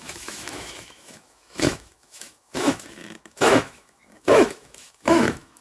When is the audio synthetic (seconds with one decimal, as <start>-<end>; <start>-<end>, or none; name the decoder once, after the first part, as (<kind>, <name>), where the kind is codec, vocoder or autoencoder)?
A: 0.0-5.6 (autoencoder, DAC-VAE)